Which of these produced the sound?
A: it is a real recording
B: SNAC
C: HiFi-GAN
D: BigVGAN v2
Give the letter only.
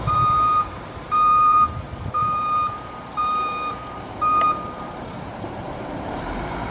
D